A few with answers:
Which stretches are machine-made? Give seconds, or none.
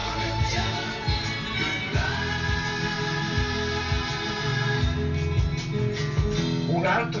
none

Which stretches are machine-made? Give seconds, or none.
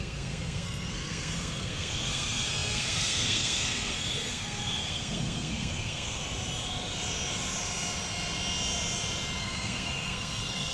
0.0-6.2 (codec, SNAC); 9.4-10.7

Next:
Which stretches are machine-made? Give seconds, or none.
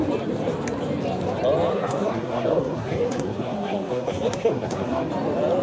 1.7-5.1 (codec, SNAC)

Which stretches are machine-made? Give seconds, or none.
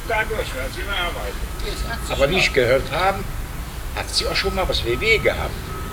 0.0-1.9 (codec, DAC); 2.4-3.2; 4.1-4.7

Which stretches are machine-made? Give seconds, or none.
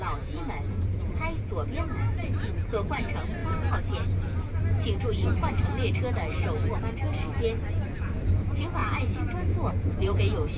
0.0-3.4 (vocoder, Vocos); 7.7-10.6